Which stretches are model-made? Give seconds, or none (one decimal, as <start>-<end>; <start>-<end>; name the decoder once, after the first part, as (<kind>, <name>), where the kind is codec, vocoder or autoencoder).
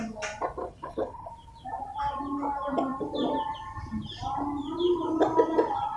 0.6-1.3 (codec, HILCodec)